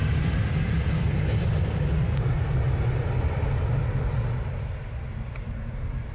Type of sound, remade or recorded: recorded